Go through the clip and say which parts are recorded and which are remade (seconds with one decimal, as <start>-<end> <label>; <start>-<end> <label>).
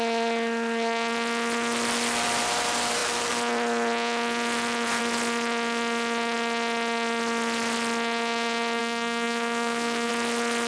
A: 0.0-8.8 recorded; 8.8-10.1 remade; 10.1-10.7 recorded